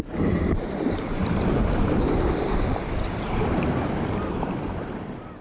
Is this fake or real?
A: fake